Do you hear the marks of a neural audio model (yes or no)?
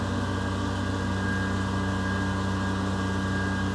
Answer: no